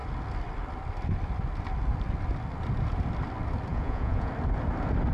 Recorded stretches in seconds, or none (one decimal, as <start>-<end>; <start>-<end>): 0.0-3.7; 4.3-5.1